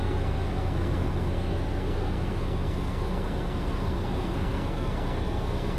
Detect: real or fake fake